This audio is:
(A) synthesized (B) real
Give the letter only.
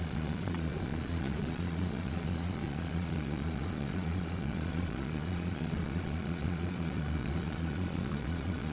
A